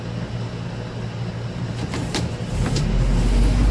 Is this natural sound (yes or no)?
yes